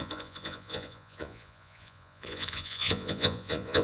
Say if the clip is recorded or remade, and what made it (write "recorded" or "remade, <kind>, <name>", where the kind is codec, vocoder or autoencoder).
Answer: remade, vocoder, Vocos